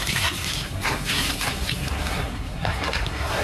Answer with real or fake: fake